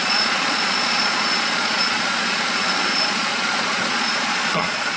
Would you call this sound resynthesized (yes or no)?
yes